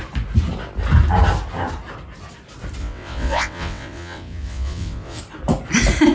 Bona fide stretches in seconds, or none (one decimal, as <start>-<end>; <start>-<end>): 0.0-2.8; 5.2-6.1